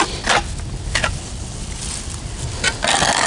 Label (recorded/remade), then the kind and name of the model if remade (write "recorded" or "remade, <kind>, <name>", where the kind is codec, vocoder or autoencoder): recorded